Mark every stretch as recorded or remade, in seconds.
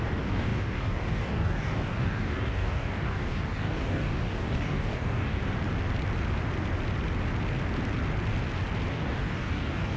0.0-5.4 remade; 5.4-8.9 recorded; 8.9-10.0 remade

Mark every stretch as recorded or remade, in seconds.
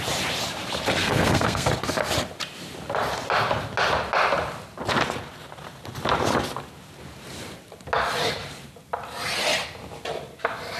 0.0-1.0 recorded; 1.0-1.7 remade; 1.7-10.8 recorded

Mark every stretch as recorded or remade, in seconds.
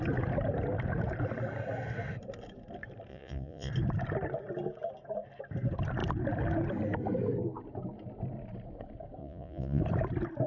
0.0-3.1 recorded; 3.1-3.7 remade; 3.7-9.2 recorded; 9.2-9.8 remade; 9.8-10.5 recorded